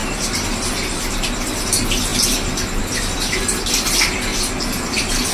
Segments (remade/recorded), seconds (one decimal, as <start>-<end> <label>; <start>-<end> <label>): 0.0-4.3 recorded; 4.3-5.3 remade